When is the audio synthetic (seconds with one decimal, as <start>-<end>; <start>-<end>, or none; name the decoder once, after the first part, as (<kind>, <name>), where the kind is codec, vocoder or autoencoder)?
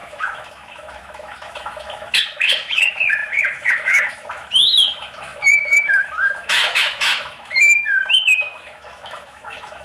0.0-9.8 (autoencoder, DAC-VAE)